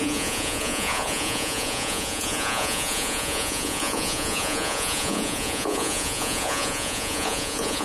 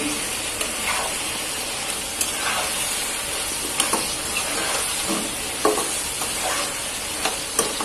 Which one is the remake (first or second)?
first